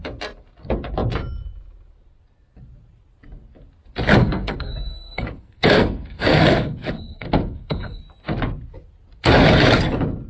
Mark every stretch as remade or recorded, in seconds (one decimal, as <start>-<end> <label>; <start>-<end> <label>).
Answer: 0.0-4.2 recorded; 4.2-8.0 remade; 8.0-10.3 recorded